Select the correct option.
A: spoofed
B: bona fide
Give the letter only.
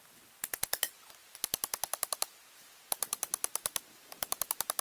B